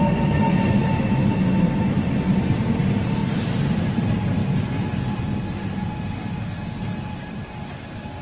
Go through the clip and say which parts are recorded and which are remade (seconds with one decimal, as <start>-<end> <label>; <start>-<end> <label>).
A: 0.0-8.2 recorded